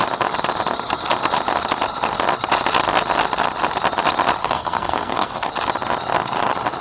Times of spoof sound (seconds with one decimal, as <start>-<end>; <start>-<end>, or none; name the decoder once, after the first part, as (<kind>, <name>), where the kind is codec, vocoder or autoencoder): 4.4-5.5 (codec, SNAC)